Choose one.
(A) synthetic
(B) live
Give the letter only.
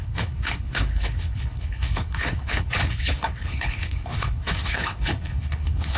A